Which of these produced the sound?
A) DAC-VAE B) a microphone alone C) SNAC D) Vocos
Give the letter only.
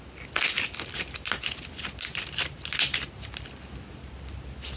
B